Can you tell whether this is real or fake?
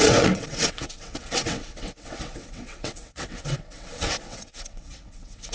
fake